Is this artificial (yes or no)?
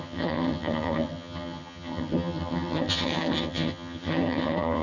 yes